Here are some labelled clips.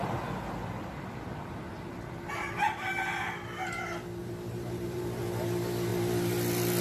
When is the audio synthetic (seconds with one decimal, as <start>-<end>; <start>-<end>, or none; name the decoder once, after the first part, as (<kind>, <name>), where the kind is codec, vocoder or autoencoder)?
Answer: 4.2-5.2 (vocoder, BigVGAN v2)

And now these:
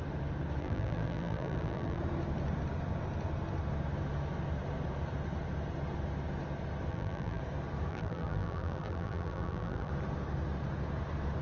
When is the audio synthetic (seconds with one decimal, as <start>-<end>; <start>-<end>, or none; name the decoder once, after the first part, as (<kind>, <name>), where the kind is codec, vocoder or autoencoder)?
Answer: 0.6-2.0 (vocoder, BigVGAN v2); 6.9-7.4; 7.9-9.9

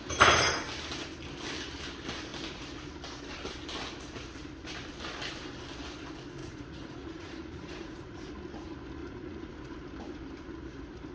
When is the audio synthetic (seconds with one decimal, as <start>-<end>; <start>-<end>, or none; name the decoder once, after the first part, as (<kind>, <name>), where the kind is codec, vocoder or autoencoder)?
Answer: 6.4-8.3 (vocoder, Vocos); 9.0-9.5